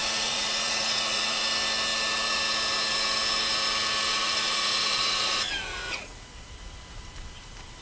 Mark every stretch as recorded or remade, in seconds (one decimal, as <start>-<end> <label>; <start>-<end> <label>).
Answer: 0.0-1.4 remade; 1.4-4.1 recorded; 4.1-6.3 remade; 6.3-7.8 recorded